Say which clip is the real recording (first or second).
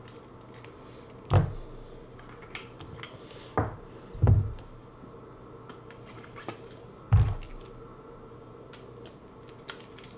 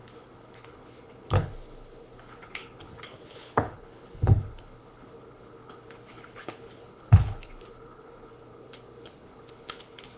first